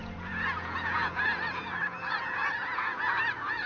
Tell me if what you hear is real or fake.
fake